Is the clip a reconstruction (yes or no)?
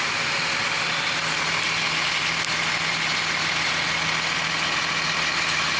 no